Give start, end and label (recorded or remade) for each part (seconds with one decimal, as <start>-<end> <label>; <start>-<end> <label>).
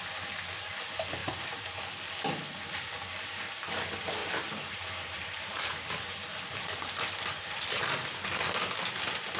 0.0-1.2 recorded; 1.2-1.7 remade; 1.7-4.2 recorded; 4.2-7.8 remade; 7.8-9.4 recorded